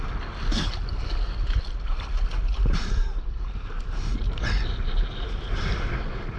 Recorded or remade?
recorded